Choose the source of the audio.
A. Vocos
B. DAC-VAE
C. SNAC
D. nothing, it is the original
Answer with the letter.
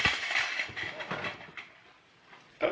D